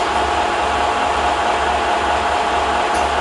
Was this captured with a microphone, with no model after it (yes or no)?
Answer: yes